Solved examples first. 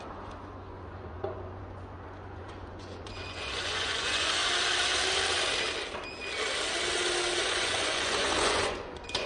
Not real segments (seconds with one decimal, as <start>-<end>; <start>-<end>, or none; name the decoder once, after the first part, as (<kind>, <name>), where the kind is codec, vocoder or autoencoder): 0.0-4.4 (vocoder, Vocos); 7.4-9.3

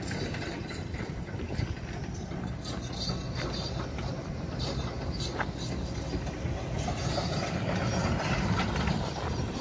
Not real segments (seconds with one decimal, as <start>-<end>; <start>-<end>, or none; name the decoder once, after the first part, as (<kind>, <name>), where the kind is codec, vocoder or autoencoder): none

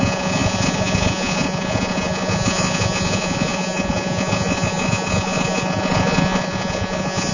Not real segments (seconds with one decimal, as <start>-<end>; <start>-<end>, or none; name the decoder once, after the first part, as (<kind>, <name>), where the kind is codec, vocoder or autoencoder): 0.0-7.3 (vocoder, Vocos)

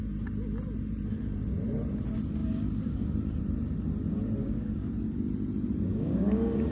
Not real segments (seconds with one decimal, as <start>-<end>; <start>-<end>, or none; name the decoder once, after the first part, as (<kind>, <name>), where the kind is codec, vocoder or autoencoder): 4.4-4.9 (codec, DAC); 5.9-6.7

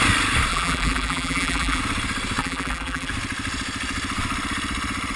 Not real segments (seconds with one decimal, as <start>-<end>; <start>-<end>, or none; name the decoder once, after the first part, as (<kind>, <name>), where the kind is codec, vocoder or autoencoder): 0.5-1.8 (vocoder, BigVGAN v2); 2.4-3.1

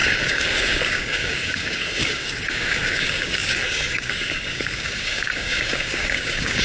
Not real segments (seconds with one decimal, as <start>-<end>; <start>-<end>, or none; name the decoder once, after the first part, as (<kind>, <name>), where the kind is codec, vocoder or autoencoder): 0.0-6.6 (codec, DAC)

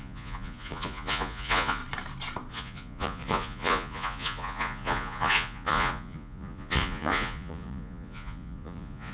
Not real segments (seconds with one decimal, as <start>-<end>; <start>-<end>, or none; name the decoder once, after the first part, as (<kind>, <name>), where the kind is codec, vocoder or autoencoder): 0.0-1.8 (vocoder, Vocos); 2.5-9.1

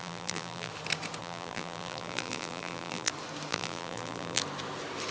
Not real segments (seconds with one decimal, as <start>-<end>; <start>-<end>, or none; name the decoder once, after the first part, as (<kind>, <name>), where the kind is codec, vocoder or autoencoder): 0.0-0.7 (vocoder, BigVGAN v2); 1.2-3.1; 3.5-4.4